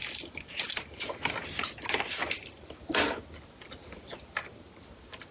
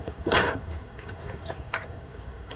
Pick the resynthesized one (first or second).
second